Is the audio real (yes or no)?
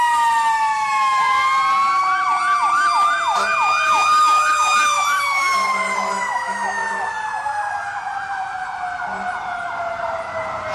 yes